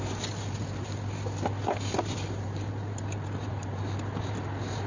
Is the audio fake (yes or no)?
no